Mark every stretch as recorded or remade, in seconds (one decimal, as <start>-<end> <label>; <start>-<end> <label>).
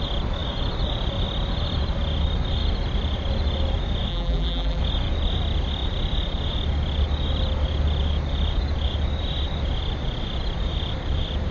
0.0-4.1 recorded; 4.1-4.8 remade; 4.8-11.5 recorded